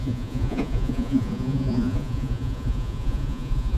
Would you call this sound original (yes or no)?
no